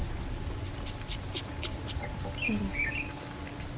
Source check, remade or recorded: recorded